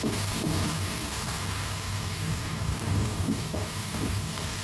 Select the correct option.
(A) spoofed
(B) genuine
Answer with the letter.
A